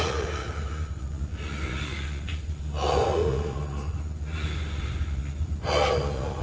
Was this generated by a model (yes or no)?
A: yes